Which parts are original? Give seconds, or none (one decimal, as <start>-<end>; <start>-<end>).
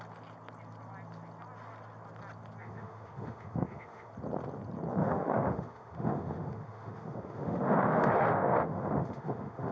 0.0-2.6; 4.1-5.0